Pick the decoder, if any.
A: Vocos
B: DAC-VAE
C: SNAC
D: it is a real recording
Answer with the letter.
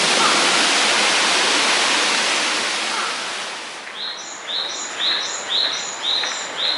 D